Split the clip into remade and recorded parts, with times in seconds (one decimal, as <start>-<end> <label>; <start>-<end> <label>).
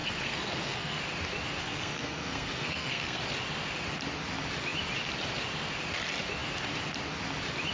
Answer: 0.0-1.0 remade; 1.0-1.6 recorded; 1.6-3.2 remade; 3.2-7.7 recorded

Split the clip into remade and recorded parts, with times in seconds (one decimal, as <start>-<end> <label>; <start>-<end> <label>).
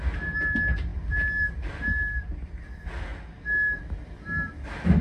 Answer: 0.0-5.0 recorded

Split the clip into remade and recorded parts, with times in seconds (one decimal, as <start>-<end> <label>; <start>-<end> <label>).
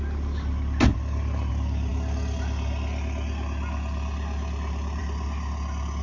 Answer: 0.0-6.0 recorded